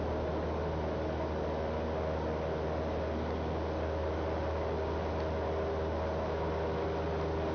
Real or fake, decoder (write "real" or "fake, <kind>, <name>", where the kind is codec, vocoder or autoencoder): real